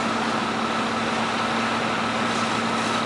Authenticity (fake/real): real